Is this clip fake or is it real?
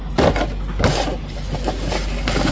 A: real